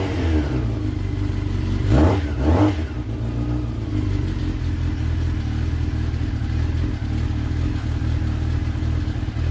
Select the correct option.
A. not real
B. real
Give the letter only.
B